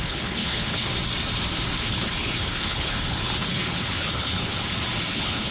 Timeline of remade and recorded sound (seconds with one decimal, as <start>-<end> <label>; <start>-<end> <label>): 0.0-0.9 remade; 0.9-1.8 recorded; 1.8-4.5 remade; 4.5-5.1 recorded; 5.1-5.5 remade